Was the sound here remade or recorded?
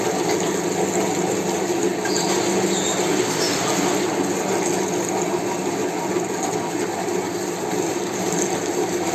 recorded